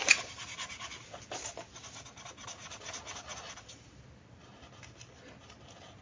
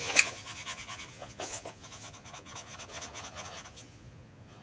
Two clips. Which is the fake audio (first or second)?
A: second